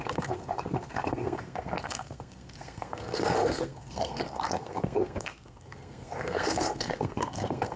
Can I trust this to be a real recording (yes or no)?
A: no